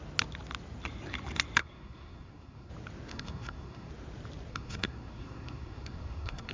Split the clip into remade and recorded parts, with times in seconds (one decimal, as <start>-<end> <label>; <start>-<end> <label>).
0.0-1.6 recorded; 1.6-2.7 remade; 2.7-3.1 recorded; 3.1-3.9 remade; 3.9-4.5 recorded; 4.5-6.5 remade